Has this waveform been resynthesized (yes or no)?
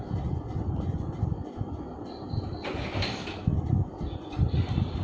no